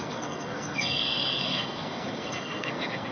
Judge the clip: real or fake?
fake